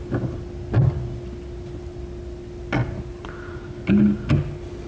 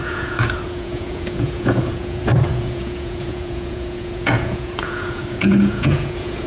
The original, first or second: first